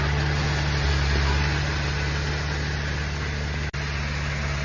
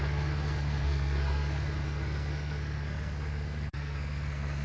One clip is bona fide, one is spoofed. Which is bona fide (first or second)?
first